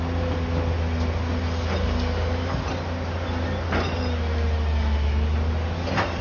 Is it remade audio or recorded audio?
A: recorded